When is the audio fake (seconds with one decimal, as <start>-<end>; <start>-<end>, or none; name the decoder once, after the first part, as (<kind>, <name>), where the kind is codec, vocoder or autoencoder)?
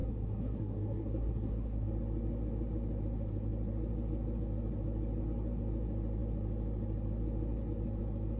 0.0-1.9 (codec, SNAC)